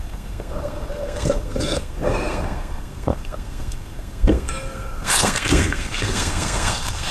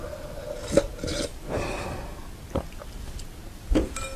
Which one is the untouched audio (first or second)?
second